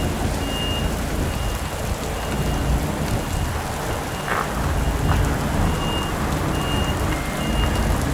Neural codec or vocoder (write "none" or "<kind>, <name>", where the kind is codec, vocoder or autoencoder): none